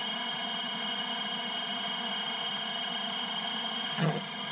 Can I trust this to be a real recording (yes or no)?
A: no